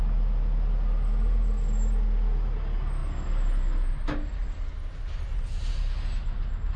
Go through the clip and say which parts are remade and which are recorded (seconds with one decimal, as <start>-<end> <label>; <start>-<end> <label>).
0.0-6.8 recorded